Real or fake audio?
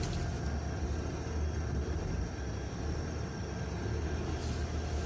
real